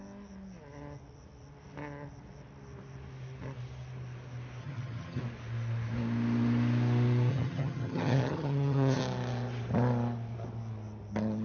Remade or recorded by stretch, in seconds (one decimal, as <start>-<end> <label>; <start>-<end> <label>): 0.0-4.6 recorded; 4.6-5.2 remade; 5.2-7.3 recorded; 7.3-9.0 remade; 9.0-11.4 recorded